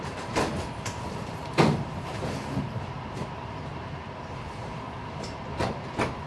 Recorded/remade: remade